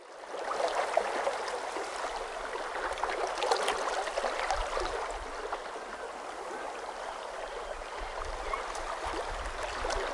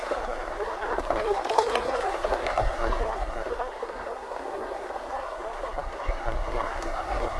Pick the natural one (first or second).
first